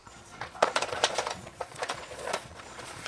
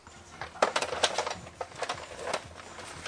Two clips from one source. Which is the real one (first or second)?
second